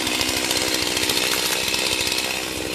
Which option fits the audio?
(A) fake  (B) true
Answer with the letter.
A